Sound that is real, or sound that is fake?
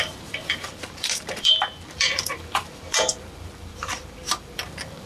fake